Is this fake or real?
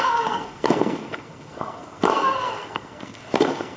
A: fake